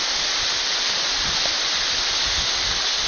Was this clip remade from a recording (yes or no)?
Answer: no